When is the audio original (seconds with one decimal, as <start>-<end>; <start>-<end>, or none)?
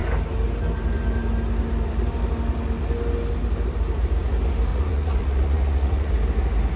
0.0-4.7; 6.1-6.8